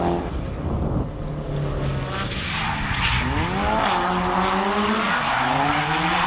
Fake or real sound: real